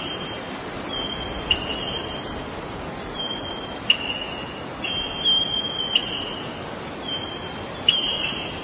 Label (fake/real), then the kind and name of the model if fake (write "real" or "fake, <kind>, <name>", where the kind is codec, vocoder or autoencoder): real